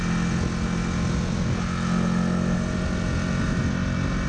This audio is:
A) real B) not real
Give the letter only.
A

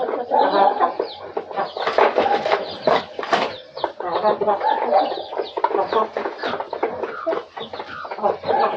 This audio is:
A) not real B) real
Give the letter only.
B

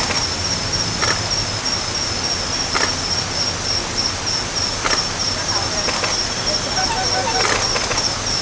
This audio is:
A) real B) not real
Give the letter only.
A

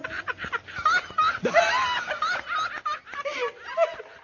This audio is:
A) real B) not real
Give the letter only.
A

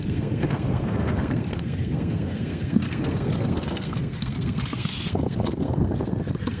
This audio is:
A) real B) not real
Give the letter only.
B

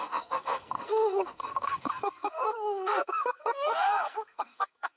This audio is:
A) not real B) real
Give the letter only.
A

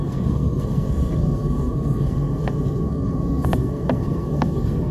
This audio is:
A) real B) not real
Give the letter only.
B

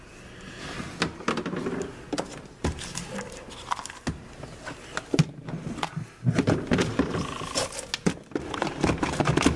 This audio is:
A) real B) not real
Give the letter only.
A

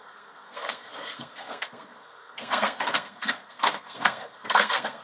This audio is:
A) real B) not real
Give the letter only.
B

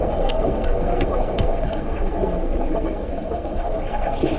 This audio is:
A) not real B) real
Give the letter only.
A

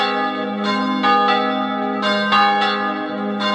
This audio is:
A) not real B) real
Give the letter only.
B